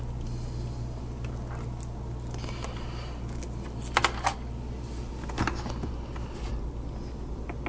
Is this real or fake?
real